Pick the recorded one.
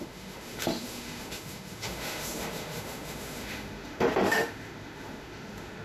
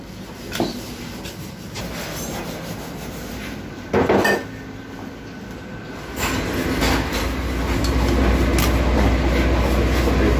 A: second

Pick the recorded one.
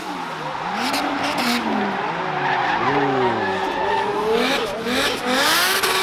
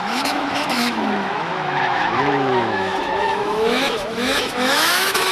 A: first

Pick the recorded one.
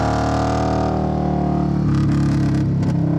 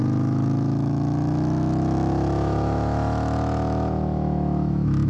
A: first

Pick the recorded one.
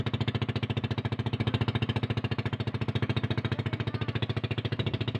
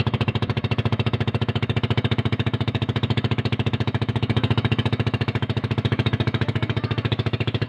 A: first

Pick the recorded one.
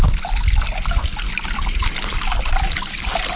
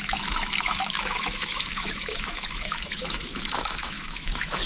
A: first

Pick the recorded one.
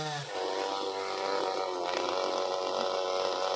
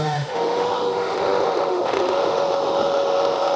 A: first